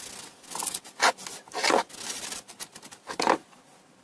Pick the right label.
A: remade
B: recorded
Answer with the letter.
B